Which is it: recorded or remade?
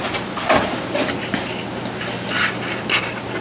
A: recorded